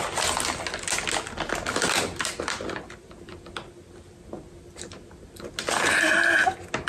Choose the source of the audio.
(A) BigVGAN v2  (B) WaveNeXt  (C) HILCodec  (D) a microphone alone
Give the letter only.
D